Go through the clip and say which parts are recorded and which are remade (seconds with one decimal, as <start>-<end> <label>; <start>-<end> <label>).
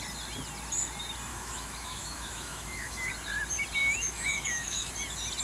0.0-1.3 recorded; 1.3-3.1 remade; 3.1-3.8 recorded; 3.8-4.9 remade; 4.9-5.4 recorded